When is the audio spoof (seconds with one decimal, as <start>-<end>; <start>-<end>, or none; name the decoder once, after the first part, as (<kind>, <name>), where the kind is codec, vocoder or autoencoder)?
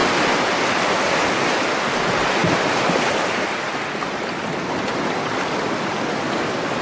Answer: 2.4-6.8 (vocoder, BigVGAN v2)